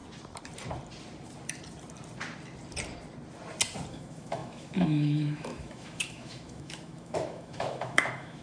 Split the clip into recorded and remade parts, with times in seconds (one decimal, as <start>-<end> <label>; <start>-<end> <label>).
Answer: 0.0-3.9 recorded; 3.9-8.4 remade